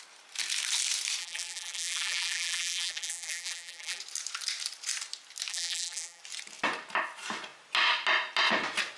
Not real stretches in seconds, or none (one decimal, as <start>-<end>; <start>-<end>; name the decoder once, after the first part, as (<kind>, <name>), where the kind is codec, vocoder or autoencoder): 1.2-4.0 (vocoder, BigVGAN v2); 5.5-6.2